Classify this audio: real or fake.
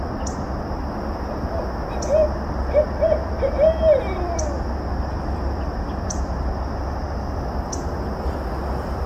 real